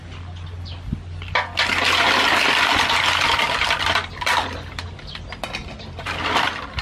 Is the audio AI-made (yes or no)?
no